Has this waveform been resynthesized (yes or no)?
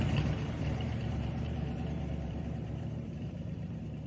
yes